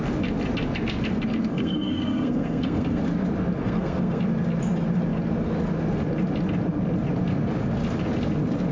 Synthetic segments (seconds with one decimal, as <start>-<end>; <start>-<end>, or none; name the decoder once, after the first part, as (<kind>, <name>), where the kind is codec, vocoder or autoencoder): 1.5-3.0 (codec, SNAC); 3.6-4.2